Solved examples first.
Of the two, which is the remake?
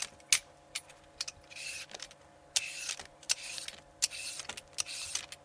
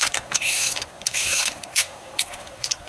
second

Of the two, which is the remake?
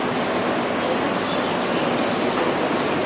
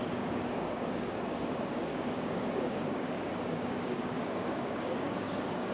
second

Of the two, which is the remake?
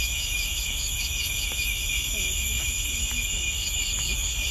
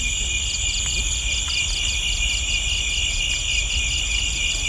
first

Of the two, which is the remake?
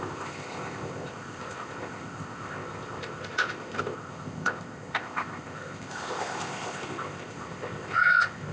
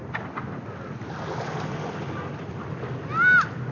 first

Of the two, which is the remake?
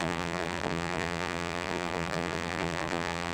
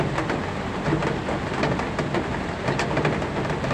first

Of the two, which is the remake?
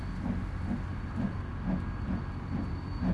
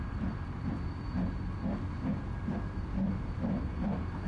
second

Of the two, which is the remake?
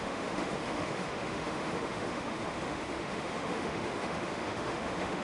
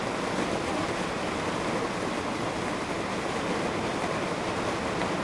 first